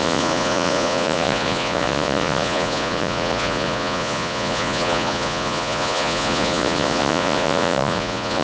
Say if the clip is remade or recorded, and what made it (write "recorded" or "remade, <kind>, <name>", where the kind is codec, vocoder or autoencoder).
remade, vocoder, Vocos